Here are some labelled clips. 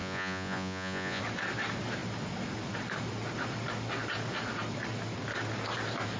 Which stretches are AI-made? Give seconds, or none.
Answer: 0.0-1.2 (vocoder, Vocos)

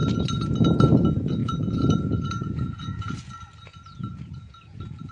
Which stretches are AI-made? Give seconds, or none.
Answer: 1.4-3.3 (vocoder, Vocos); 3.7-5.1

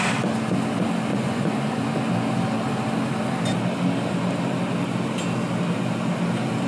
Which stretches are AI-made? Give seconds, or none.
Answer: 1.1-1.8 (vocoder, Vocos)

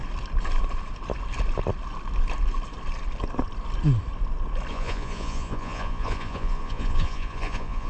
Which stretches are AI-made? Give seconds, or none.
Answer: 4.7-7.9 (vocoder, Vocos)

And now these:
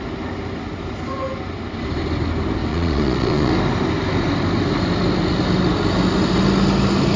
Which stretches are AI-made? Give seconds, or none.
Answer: 2.7-3.5 (vocoder, Vocos)